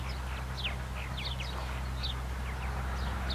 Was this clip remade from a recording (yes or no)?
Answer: no